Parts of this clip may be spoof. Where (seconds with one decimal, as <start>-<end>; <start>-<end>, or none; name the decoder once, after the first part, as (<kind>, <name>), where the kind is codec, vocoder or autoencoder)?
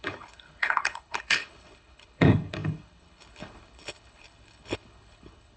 0.0-5.6 (codec, HILCodec)